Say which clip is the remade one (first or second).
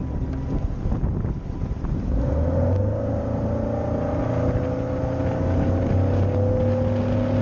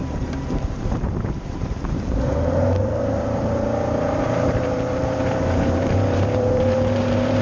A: second